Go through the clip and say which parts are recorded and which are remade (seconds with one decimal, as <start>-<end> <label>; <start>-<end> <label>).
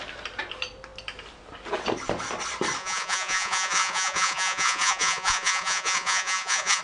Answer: 0.0-2.8 recorded; 2.8-6.8 remade